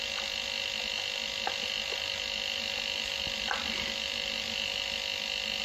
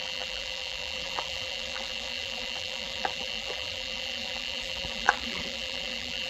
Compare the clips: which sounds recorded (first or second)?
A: first